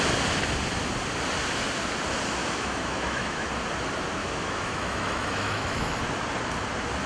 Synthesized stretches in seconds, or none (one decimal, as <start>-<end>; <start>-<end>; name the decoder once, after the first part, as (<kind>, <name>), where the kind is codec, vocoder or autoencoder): 2.4-3.5 (autoencoder, DAC-VAE); 4.2-6.0

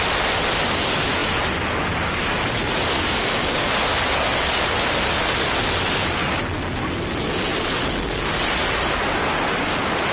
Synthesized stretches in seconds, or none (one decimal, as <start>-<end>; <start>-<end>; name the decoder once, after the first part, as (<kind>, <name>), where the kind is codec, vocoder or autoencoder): none

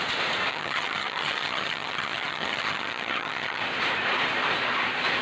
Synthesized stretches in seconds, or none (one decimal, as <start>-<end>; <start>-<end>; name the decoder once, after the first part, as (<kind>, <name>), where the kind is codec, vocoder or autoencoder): 0.5-3.6 (vocoder, HiFi-GAN)